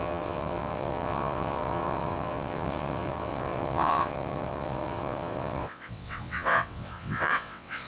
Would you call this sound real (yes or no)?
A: no